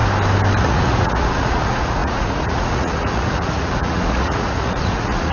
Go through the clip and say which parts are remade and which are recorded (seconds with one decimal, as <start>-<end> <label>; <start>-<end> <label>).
0.0-0.6 recorded; 0.6-5.3 remade